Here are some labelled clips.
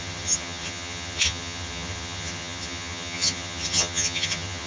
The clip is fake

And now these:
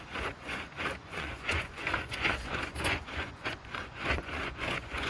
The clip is fake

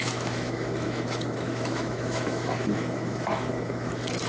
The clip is fake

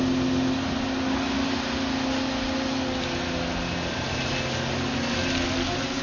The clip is real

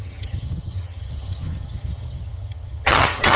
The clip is fake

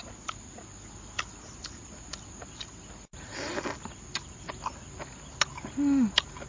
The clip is real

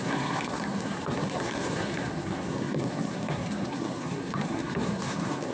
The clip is fake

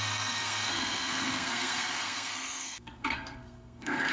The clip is fake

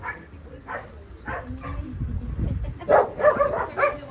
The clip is real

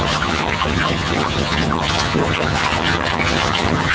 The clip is fake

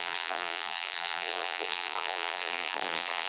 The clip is fake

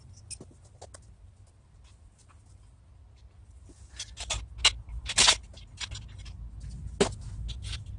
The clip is real